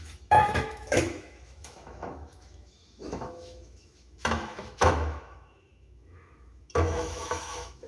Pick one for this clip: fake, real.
fake